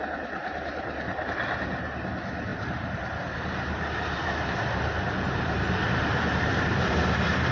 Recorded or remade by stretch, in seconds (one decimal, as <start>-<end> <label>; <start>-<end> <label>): 0.0-2.5 recorded; 2.5-6.9 remade; 6.9-7.5 recorded

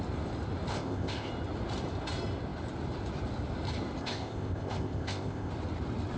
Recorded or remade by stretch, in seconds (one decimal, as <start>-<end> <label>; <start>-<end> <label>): 0.0-0.7 recorded; 0.7-1.3 remade; 1.3-4.0 recorded; 4.0-5.5 remade; 5.5-6.2 recorded

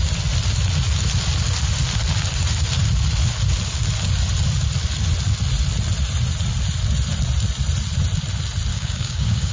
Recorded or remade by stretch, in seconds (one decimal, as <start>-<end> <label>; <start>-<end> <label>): 0.0-8.7 recorded; 8.7-9.5 remade